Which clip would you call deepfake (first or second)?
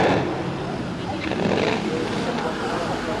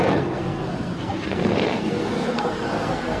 second